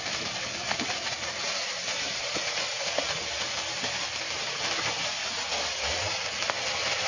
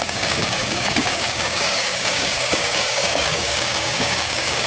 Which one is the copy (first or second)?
second